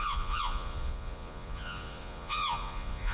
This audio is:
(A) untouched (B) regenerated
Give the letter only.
B